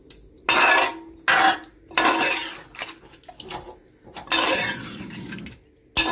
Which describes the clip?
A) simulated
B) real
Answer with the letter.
B